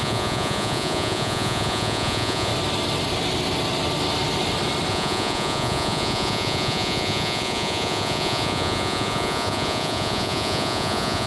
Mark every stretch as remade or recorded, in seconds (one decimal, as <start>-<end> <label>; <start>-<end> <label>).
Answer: 0.0-2.5 remade; 2.5-4.9 recorded; 4.9-11.3 remade